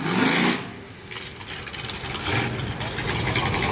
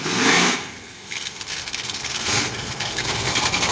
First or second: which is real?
first